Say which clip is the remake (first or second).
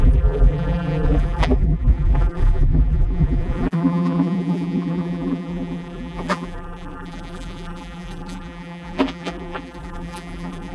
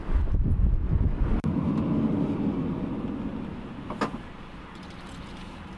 first